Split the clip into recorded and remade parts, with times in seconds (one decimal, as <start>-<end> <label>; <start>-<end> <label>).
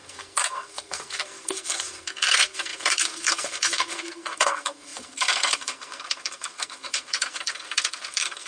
0.0-8.5 remade